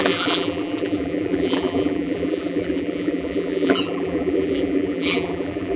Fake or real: fake